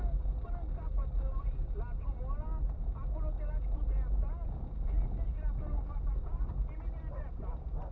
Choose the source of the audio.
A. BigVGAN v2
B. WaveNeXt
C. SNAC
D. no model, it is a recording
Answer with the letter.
D